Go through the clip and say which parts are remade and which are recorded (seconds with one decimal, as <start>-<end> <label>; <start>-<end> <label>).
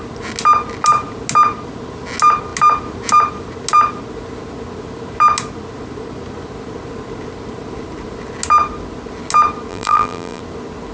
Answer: 0.0-9.7 recorded; 9.7-10.4 remade; 10.4-10.9 recorded